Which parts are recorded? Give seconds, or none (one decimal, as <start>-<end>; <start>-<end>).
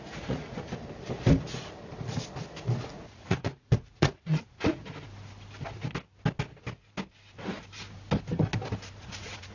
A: 0.7-2.9; 4.8-9.0